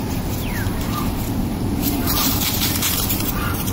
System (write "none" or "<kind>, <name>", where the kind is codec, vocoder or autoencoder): vocoder, BigVGAN v2